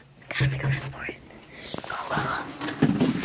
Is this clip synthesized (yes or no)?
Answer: no